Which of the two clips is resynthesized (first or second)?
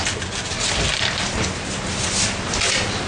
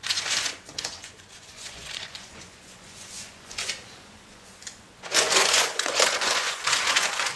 second